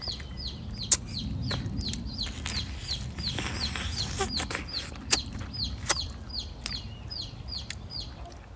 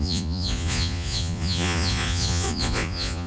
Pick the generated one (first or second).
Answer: second